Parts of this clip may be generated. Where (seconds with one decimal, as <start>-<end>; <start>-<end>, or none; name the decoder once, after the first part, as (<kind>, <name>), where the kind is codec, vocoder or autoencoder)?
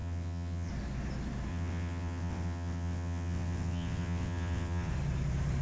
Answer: 0.0-0.7 (vocoder, WaveNeXt); 1.5-4.9